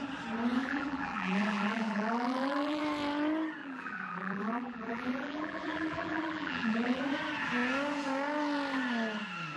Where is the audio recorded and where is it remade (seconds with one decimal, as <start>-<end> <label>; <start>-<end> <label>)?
0.0-0.6 recorded; 0.6-2.8 remade; 2.8-3.6 recorded; 3.6-7.0 remade; 7.0-9.6 recorded